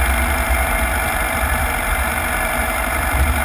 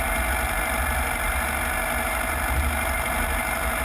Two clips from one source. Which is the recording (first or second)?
second